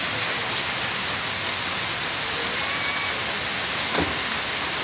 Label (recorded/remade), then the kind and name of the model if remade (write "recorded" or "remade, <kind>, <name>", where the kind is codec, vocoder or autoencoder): recorded